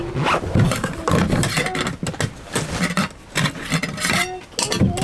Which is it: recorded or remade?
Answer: recorded